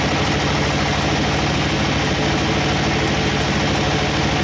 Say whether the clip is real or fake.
real